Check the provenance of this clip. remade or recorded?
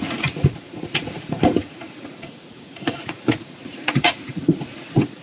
remade